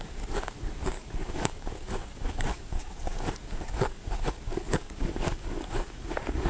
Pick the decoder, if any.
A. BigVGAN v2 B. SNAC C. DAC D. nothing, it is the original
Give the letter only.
C